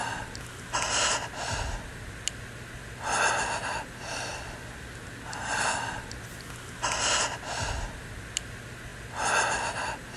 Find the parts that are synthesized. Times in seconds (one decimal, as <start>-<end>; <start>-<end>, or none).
none